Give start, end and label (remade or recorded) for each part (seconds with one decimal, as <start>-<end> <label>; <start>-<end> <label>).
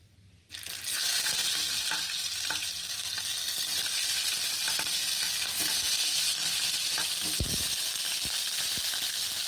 0.0-9.5 recorded